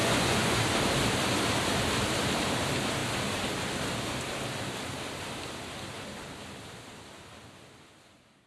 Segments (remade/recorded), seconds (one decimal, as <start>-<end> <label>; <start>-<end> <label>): 0.0-0.6 remade; 0.6-8.5 recorded